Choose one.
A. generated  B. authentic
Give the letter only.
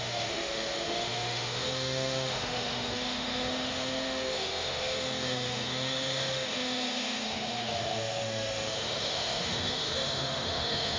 A